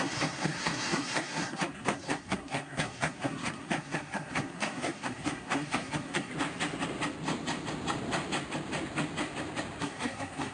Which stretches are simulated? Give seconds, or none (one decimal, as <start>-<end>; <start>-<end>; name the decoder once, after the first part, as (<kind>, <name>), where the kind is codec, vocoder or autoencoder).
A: 0.0-6.3 (codec, SNAC); 9.8-10.5